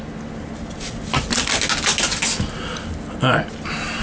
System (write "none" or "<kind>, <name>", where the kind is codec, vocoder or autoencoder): none